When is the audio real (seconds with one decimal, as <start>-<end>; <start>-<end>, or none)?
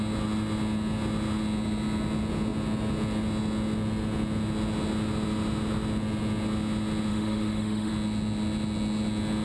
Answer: 0.0-7.1; 7.9-9.4